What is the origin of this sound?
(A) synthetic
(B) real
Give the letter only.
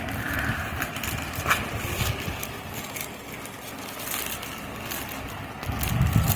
B